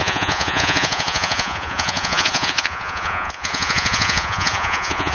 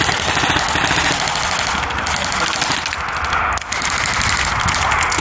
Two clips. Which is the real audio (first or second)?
second